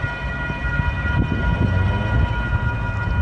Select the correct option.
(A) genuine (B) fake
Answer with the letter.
A